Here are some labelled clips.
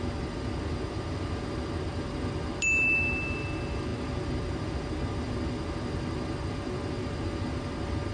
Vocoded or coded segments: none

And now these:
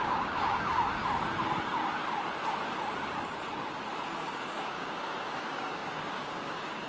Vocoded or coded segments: 0.0-1.0 (codec, DAC); 3.9-6.9